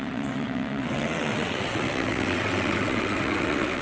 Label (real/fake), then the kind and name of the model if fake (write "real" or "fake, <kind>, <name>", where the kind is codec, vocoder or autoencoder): fake, vocoder, WaveNeXt